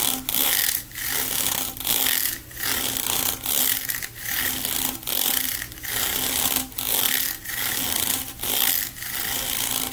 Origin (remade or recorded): recorded